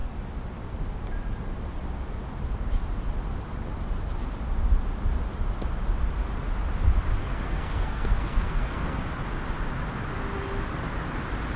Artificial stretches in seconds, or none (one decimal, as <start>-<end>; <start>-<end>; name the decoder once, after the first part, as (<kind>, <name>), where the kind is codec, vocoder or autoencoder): 7.2-9.0 (codec, SNAC)